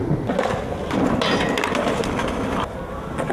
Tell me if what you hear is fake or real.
real